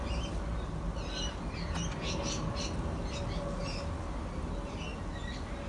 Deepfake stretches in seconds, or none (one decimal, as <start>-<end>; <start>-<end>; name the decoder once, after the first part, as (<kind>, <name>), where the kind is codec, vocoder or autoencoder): none